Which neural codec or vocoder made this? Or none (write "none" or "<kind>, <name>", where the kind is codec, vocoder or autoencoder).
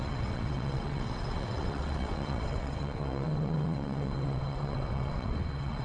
vocoder, WaveNeXt